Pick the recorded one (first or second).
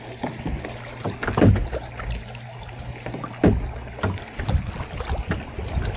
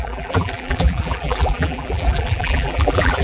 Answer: first